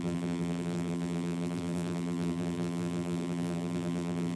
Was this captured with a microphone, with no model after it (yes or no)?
no